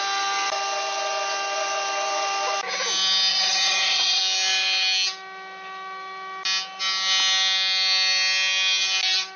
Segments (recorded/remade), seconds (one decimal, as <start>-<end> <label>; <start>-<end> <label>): 0.0-3.3 recorded; 3.3-4.2 remade; 4.2-9.4 recorded